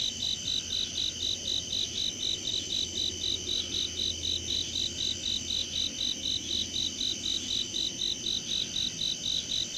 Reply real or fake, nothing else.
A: real